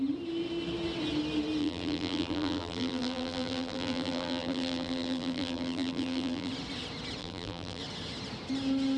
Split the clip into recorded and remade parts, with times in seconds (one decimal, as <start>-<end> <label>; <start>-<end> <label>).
0.0-1.6 recorded; 1.6-6.5 remade; 6.5-7.2 recorded; 7.2-7.8 remade; 7.8-9.0 recorded